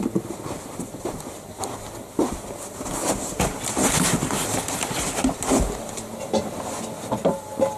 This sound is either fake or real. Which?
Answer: real